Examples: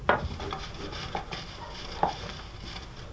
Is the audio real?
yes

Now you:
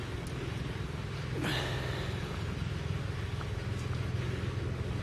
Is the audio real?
yes